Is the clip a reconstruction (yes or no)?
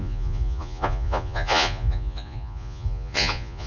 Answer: yes